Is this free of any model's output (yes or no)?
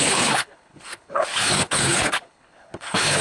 no